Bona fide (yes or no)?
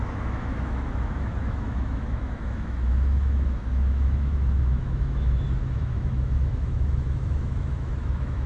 no